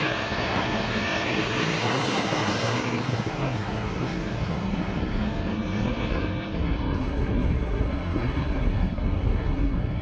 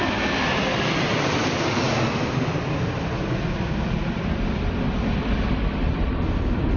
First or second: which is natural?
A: second